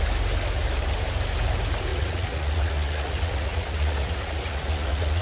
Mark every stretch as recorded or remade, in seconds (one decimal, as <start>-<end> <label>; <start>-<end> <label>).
0.0-1.9 recorded; 1.9-5.2 remade